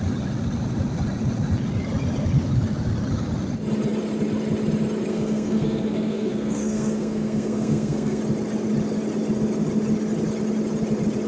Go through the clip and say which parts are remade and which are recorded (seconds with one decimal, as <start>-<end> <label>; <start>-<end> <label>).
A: 0.0-5.1 recorded; 5.1-8.2 remade; 8.2-11.3 recorded